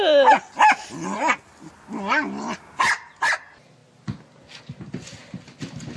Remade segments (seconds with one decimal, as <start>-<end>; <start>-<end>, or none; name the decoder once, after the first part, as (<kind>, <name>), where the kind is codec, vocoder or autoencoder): none